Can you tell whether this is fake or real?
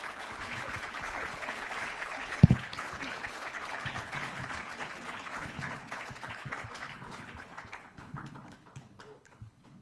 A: fake